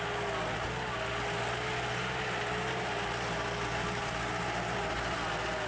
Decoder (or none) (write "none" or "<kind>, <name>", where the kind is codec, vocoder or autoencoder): none